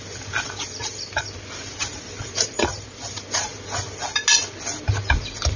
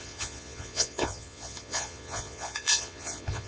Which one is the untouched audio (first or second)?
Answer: first